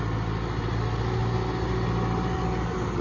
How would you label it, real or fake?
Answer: real